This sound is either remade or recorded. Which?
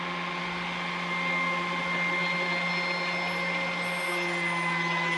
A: recorded